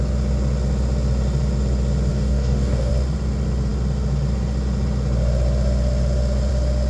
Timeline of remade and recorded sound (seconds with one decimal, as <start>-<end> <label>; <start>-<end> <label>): 0.0-2.1 recorded; 2.1-2.9 remade; 2.9-6.9 recorded